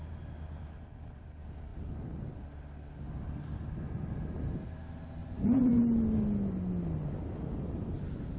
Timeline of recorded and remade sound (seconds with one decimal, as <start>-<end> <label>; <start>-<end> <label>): 0.0-5.2 recorded; 5.2-5.8 remade; 5.8-8.4 recorded